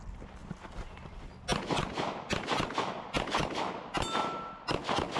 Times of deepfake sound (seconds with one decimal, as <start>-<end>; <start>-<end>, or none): 1.8-3.6